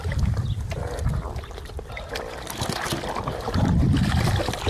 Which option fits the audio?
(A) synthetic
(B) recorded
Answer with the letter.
A